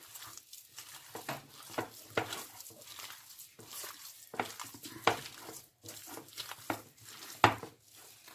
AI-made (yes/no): no